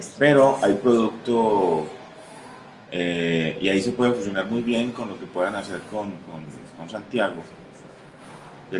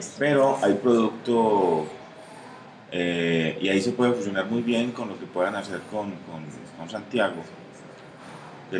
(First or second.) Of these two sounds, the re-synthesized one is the first